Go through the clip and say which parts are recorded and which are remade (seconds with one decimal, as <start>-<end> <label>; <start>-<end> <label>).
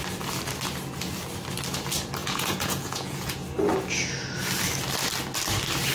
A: 0.0-2.2 recorded; 2.2-3.3 remade; 3.3-5.9 recorded